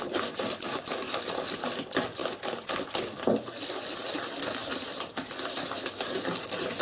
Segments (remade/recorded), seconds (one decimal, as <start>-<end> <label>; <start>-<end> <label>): 0.0-4.6 recorded; 4.6-5.1 remade; 5.1-6.8 recorded